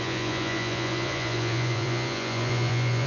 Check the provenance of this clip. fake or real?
fake